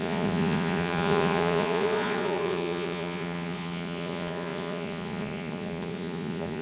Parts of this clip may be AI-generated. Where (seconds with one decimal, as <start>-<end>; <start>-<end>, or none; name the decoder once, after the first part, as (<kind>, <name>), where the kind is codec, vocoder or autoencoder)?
0.0-6.6 (vocoder, Vocos)